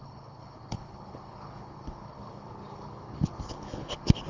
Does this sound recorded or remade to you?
remade